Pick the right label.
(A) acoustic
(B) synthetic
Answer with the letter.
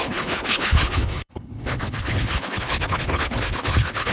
B